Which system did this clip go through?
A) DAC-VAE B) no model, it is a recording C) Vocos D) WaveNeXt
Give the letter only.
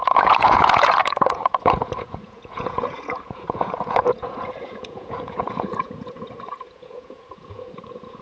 C